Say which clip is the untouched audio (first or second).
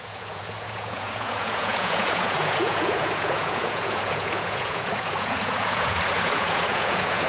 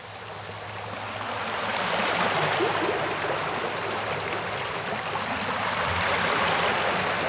second